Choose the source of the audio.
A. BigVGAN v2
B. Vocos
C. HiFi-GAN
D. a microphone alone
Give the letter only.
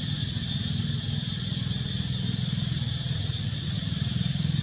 D